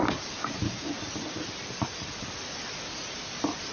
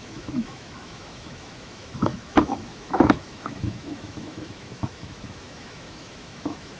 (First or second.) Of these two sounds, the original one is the first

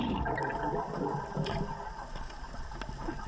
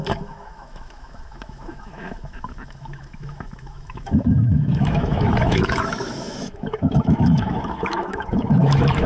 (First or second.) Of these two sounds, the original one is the first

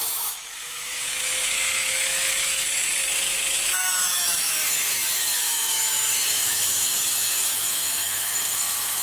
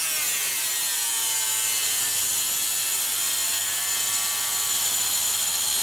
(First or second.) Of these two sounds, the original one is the second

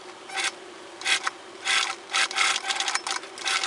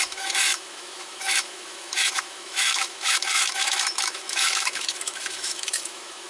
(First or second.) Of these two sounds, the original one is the first